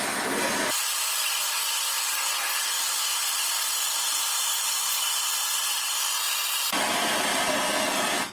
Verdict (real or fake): real